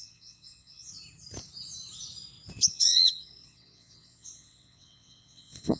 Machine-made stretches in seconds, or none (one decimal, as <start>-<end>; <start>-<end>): 0.0-0.9; 2.7-5.8